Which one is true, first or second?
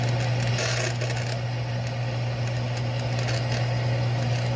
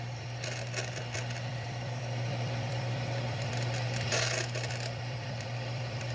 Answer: first